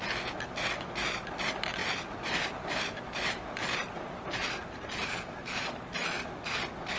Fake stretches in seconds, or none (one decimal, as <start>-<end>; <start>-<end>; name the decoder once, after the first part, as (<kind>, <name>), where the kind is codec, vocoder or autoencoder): 1.8-5.8 (vocoder, BigVGAN v2)